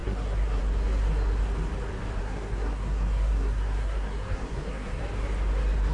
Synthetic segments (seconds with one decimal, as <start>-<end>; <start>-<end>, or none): 0.0-0.6; 2.2-5.0